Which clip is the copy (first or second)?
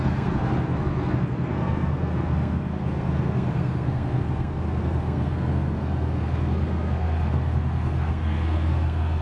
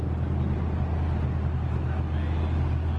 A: first